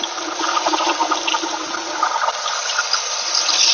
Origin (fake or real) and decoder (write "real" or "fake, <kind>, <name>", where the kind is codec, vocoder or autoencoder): real